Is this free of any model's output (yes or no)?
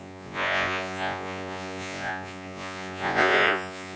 no